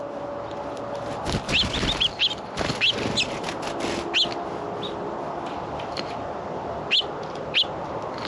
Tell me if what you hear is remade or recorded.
recorded